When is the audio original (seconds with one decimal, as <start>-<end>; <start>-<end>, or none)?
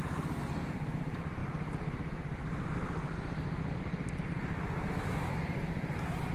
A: 0.0-4.8; 5.4-6.3